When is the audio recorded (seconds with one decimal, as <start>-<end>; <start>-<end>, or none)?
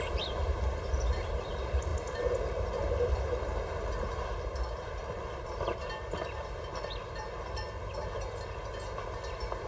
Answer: 0.0-9.7